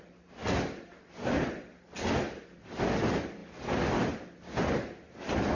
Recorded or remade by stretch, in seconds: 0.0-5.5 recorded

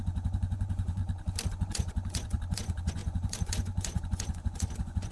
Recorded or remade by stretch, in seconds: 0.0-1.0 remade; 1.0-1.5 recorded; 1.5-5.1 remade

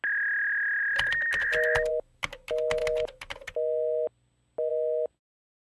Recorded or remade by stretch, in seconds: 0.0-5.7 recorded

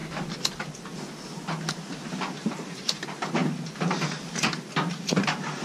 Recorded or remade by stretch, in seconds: 0.0-1.7 recorded; 1.7-5.6 remade

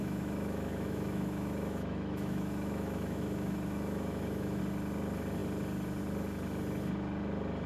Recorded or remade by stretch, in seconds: 0.0-4.6 remade; 4.6-7.7 recorded

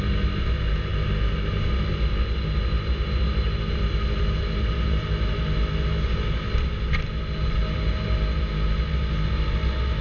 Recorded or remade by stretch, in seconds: 0.0-10.0 recorded